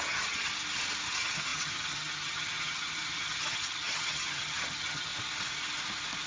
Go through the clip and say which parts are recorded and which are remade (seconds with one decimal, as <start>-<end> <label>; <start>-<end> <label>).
0.0-0.5 remade; 0.5-1.1 recorded; 1.1-5.1 remade; 5.1-6.3 recorded